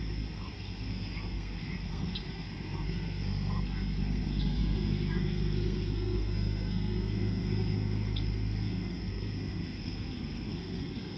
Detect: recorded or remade remade